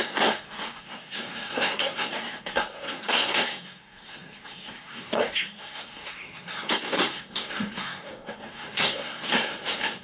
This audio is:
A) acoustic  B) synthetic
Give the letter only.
B